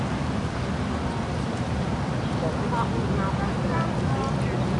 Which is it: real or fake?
real